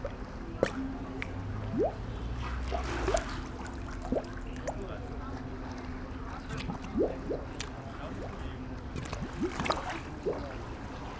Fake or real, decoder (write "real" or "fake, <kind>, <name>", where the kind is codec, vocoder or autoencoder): real